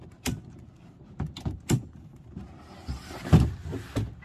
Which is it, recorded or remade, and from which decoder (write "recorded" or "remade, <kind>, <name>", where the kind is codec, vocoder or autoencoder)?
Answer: recorded